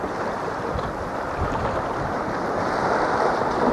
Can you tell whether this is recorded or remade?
recorded